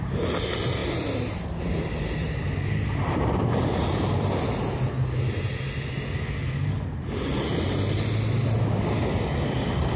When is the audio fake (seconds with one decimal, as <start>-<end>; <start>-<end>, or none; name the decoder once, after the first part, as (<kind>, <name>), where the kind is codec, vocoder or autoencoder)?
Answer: none